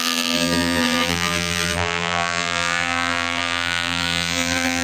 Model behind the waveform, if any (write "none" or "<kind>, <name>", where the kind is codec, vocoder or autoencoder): vocoder, BigVGAN v2